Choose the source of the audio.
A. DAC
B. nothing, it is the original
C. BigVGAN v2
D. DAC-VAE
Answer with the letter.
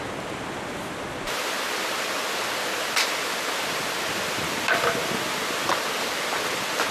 B